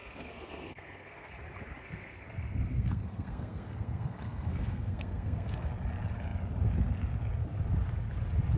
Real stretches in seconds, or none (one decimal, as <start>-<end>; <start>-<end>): 1.3-1.8; 5.7-8.6